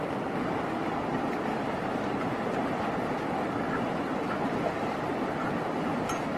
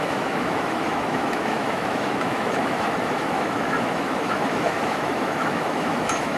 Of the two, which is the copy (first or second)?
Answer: second